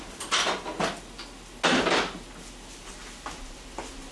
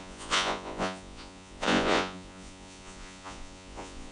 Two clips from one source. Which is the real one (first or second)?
first